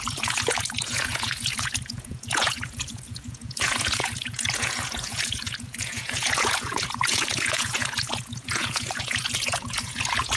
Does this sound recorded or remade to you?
remade